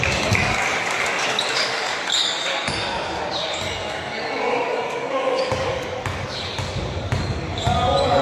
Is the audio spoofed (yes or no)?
yes